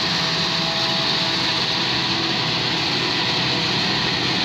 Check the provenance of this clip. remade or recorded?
recorded